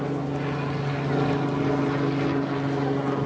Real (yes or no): yes